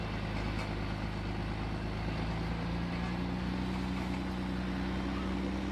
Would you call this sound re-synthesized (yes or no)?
no